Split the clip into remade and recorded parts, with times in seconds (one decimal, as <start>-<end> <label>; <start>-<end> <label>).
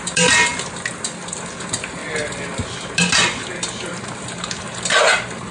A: 0.0-5.5 recorded